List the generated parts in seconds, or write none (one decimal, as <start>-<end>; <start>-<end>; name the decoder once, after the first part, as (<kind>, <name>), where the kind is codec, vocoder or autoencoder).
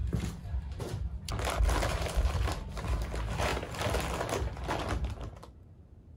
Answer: 0.0-0.8 (vocoder, BigVGAN v2); 1.9-2.7